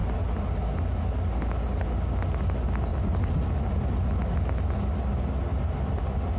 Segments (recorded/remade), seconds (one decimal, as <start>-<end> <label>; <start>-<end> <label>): 0.0-6.4 recorded